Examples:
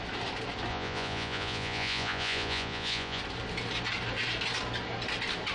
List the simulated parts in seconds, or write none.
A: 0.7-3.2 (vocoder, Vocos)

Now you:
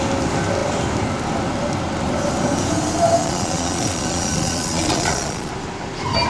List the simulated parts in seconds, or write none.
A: 3.2-5.5 (vocoder, Vocos)

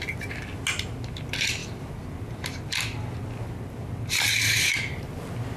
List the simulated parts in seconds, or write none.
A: none

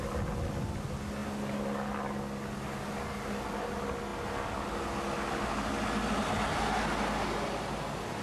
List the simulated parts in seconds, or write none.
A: none

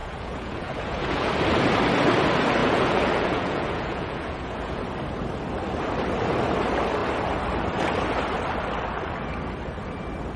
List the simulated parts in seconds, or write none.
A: 0.0-1.3 (vocoder, Vocos); 2.6-4.8

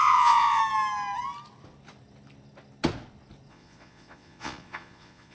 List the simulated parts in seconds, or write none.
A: 0.0-0.6 (vocoder, Vocos); 3.5-5.3

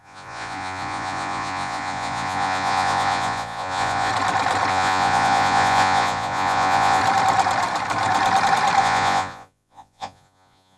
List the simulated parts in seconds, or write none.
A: 0.0-4.1 (vocoder, Vocos); 4.7-7.0; 8.8-10.8